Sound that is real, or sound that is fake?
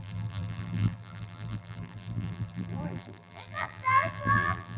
fake